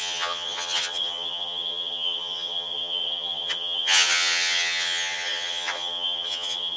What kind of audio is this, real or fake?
fake